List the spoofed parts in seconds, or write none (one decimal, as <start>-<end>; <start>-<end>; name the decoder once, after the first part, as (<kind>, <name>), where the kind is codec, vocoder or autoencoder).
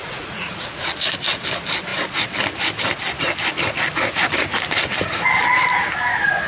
0.0-0.9 (vocoder, Vocos)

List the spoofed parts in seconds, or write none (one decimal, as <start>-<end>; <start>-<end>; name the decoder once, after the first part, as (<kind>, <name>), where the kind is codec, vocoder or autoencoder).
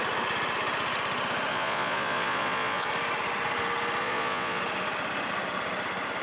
1.5-2.9 (vocoder, Vocos); 4.0-4.6